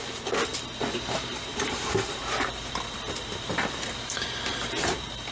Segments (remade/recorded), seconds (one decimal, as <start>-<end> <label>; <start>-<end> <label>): 0.0-0.5 remade; 0.5-1.1 recorded; 1.1-5.3 remade